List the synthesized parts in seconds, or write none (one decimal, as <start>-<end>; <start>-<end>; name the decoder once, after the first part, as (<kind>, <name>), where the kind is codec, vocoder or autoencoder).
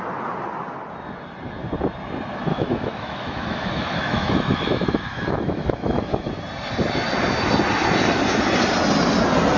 2.5-6.3 (autoencoder, DAC-VAE)